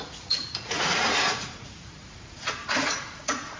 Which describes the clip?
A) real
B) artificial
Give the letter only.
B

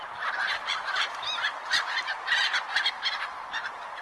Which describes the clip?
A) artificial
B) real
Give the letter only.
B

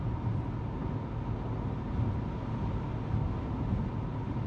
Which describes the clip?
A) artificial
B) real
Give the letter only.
B